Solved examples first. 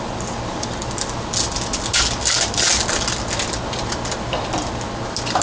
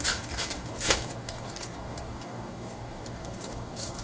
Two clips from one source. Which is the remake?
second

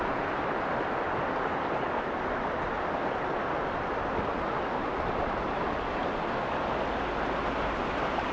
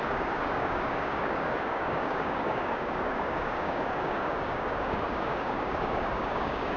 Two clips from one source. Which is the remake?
second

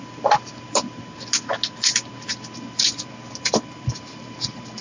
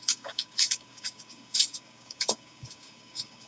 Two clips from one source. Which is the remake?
second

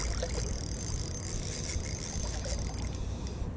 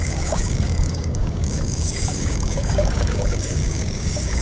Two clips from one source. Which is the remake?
second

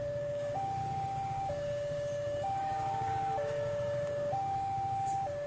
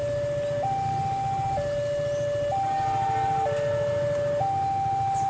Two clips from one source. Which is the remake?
first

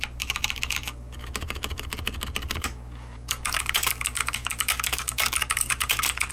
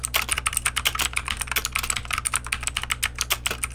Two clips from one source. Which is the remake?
first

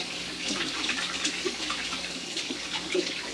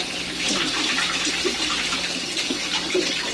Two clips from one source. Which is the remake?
first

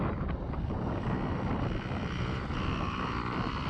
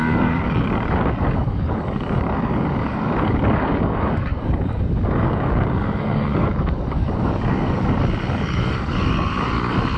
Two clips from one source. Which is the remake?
second